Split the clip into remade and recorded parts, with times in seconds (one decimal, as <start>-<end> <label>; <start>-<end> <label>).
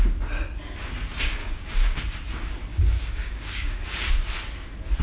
0.0-1.4 recorded; 1.4-2.0 remade; 2.0-2.7 recorded; 2.7-4.2 remade; 4.2-5.0 recorded